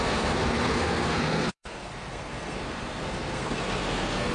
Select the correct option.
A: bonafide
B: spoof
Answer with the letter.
B